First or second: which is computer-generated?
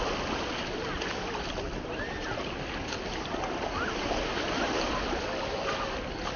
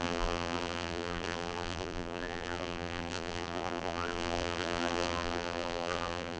second